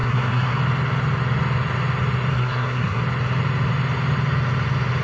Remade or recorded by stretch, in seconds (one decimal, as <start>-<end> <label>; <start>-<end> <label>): 0.0-0.6 remade; 0.6-2.3 recorded; 2.3-3.0 remade; 3.0-5.0 recorded